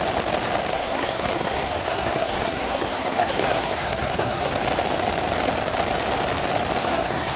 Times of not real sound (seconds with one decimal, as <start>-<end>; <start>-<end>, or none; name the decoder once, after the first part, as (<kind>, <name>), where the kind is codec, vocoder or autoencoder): 0.7-4.5 (codec, SNAC); 6.8-7.4